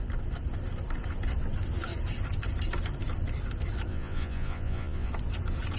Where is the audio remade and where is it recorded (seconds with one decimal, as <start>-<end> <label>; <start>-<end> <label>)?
0.0-3.9 recorded; 3.9-5.1 remade; 5.1-5.8 recorded